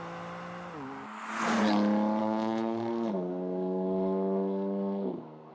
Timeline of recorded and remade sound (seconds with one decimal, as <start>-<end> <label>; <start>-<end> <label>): 0.0-2.2 recorded; 2.2-5.5 remade